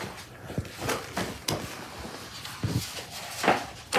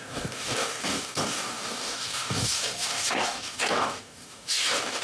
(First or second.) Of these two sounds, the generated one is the second